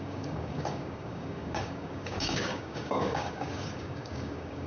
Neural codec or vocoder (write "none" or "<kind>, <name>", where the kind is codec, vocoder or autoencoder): codec, DAC